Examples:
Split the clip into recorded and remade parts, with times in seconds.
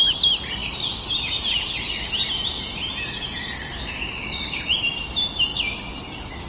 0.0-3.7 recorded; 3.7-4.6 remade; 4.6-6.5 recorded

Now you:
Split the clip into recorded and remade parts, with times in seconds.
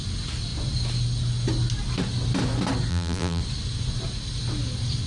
0.0-2.9 recorded; 2.9-3.4 remade; 3.4-5.1 recorded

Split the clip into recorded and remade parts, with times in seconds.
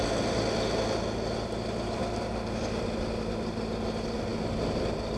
0.0-5.2 recorded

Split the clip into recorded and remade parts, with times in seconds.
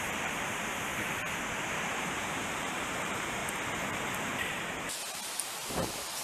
0.0-0.9 remade; 0.9-2.2 recorded; 2.2-3.4 remade; 3.4-5.0 recorded; 5.0-6.2 remade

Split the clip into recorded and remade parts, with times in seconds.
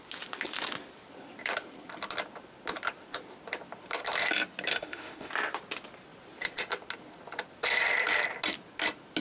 0.0-4.7 recorded; 4.7-5.3 remade; 5.3-9.2 recorded